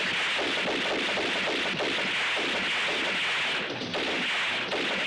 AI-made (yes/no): no